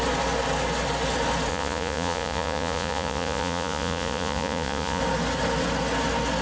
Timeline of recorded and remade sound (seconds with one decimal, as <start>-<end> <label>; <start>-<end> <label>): 0.0-1.5 recorded; 1.5-5.0 remade; 5.0-6.4 recorded